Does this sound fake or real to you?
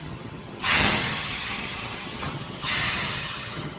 fake